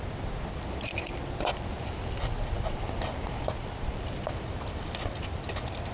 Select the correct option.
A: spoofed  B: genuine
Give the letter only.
B